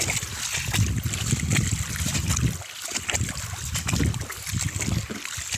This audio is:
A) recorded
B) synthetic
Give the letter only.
A